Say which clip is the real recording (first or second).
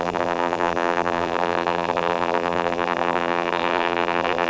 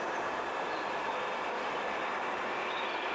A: second